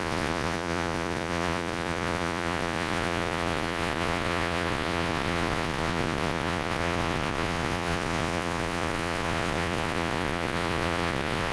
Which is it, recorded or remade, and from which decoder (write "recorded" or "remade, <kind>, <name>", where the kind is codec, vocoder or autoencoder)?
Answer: remade, vocoder, Vocos